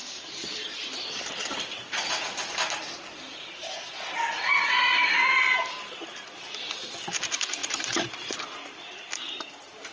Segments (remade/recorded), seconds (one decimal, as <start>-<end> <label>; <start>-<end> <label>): 0.0-4.2 remade; 4.2-7.6 recorded; 7.6-9.9 remade